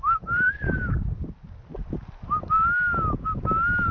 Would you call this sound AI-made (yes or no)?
no